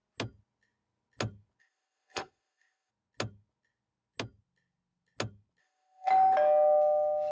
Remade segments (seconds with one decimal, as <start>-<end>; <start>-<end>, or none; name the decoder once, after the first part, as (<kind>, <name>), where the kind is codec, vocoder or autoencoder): 1.6-2.9 (codec, ZipCodec); 5.6-6.1

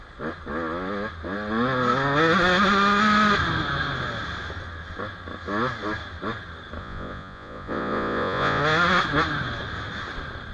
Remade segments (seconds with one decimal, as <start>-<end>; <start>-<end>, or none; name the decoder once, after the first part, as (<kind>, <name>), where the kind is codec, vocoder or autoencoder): 6.8-8.6 (vocoder, Vocos)

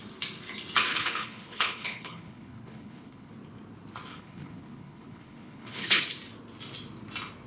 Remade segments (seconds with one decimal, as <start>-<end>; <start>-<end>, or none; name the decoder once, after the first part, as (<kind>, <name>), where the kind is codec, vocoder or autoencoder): 0.9-3.3 (codec, HILCodec); 4.1-6.0

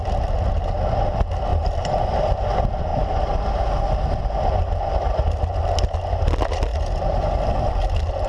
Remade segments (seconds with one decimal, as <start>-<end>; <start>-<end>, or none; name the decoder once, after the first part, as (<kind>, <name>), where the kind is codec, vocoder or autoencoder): 1.5-2.5 (vocoder, BigVGAN v2); 6.7-7.2

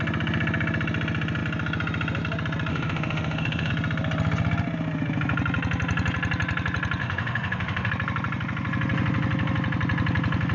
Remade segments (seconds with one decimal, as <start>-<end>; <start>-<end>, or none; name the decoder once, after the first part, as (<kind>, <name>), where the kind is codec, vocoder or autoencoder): 2.7-3.7 (autoencoder, DAC-VAE); 7.0-7.9

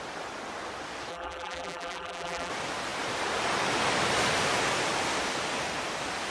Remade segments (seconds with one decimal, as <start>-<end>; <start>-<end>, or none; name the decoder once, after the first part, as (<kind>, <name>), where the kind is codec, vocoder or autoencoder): 1.1-2.5 (vocoder, BigVGAN v2)

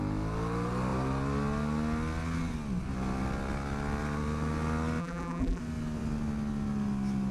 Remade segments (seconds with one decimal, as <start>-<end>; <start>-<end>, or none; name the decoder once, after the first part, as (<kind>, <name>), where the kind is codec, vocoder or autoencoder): 5.0-5.6 (vocoder, BigVGAN v2)

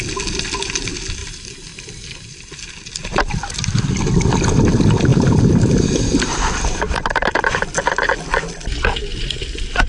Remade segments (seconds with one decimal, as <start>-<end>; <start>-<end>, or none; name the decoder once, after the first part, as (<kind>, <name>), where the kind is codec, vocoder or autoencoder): 5.1-7.3 (vocoder, BigVGAN v2)